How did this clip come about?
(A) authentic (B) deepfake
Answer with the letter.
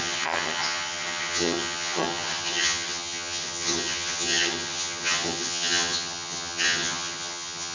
B